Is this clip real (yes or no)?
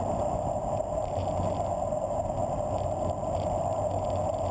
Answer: yes